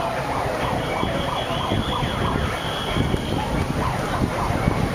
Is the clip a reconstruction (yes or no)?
yes